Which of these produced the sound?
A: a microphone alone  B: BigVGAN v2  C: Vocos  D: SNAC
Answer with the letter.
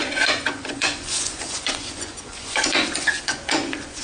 C